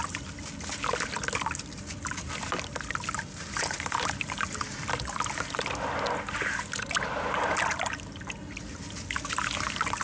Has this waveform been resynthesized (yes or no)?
no